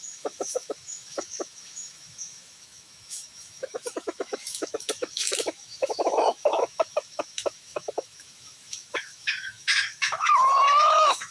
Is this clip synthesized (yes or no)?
yes